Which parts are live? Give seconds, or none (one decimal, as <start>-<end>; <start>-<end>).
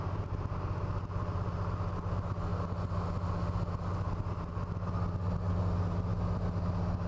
0.0-7.1